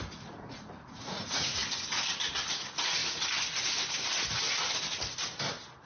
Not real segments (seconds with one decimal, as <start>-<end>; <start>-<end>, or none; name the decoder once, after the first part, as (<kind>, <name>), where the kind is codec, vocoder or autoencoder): 0.0-1.6 (vocoder, Vocos); 2.5-3.0